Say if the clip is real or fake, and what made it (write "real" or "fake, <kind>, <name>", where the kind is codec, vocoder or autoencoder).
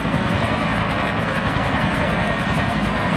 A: fake, codec, SNAC